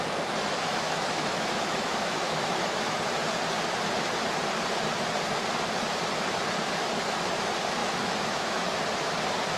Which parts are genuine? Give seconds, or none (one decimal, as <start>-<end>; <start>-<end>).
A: 0.0-0.7; 3.0-7.8; 8.7-9.6